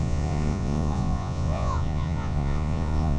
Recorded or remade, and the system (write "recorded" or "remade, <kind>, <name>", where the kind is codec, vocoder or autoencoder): remade, vocoder, Vocos